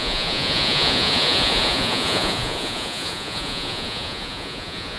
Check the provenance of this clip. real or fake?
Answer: fake